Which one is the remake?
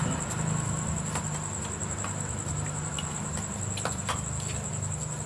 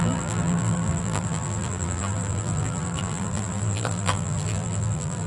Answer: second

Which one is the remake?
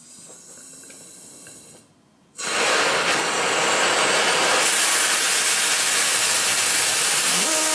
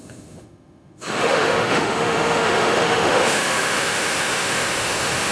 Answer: second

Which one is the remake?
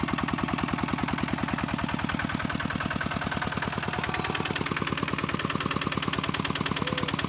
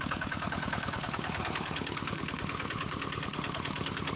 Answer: second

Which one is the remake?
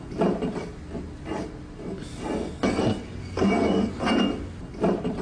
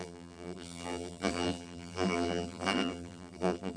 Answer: second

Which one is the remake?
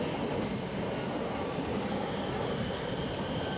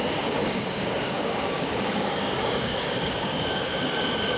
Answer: second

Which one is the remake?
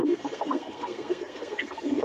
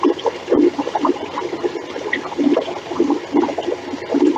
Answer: first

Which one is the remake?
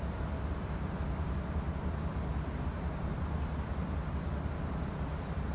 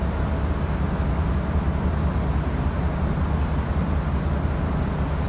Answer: first